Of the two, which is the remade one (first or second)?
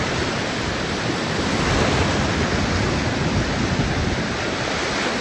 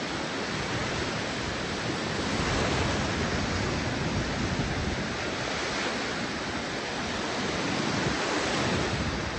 first